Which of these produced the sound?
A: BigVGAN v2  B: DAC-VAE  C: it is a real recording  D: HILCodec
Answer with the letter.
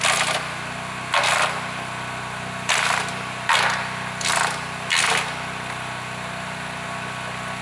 C